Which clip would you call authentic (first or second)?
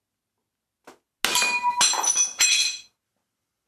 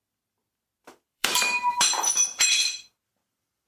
first